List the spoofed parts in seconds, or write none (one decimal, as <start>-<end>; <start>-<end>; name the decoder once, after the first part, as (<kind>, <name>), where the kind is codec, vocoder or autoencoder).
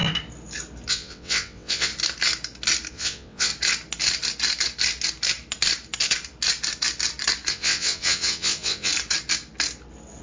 0.9-1.9 (vocoder, WaveNeXt); 2.9-3.5; 7.5-8.9